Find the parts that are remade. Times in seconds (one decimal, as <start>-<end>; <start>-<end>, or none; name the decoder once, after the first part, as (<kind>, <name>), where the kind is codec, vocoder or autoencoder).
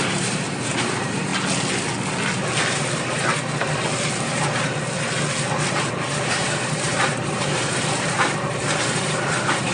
0.0-1.3 (vocoder, BigVGAN v2); 5.9-9.7